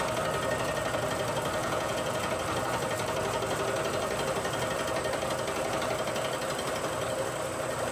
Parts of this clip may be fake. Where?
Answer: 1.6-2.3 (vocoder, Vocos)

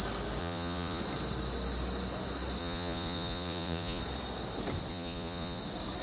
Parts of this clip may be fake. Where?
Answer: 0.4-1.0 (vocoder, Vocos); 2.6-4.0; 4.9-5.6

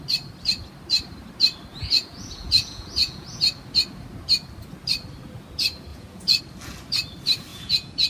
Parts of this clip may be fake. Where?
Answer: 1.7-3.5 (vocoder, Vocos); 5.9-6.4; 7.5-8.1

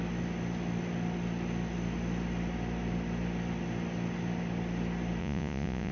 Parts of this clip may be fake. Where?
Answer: 5.2-5.9 (vocoder, Vocos)